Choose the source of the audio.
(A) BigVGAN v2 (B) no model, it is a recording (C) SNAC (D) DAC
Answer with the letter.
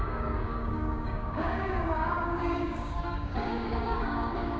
D